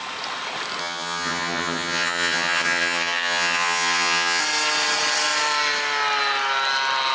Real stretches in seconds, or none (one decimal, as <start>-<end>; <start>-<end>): 0.0-0.8; 4.4-7.1

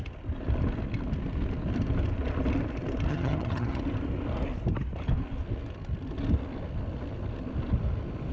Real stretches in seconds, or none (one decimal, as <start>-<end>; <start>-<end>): 0.0-3.1; 3.8-8.3

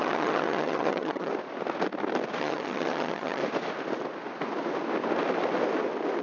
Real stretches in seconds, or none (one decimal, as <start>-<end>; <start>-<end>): 1.3-2.4; 3.4-6.2

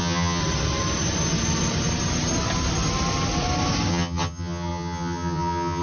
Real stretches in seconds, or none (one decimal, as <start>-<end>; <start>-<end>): 0.4-3.9

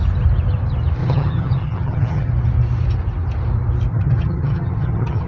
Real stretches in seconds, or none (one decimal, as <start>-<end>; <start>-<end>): 0.0-1.0; 2.3-3.9

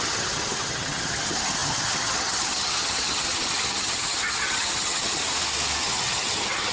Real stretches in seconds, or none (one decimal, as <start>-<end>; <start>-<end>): 5.2-5.8

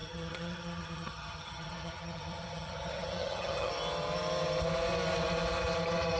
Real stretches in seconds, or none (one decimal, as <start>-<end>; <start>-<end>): 3.7-6.2